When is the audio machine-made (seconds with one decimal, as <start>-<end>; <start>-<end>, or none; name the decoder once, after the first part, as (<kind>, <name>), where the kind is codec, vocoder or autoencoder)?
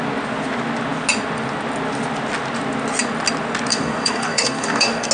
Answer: 3.7-5.1 (codec, DAC)